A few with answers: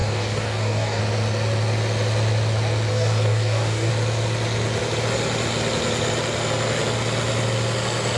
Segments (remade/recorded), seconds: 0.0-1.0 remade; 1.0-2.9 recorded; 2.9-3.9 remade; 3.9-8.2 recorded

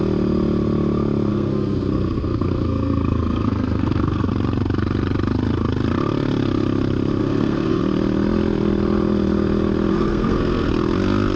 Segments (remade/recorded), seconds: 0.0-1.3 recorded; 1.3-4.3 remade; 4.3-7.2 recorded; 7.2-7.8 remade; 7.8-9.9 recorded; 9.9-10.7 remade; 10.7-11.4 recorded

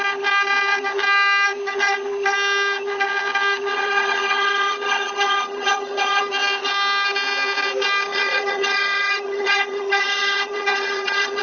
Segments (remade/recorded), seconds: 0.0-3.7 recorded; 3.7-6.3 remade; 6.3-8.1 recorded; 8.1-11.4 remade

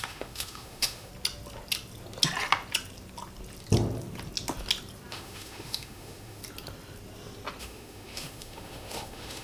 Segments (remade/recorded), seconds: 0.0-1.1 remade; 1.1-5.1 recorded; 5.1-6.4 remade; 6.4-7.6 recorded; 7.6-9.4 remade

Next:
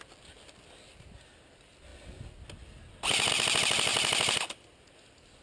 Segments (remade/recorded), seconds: 0.0-5.4 recorded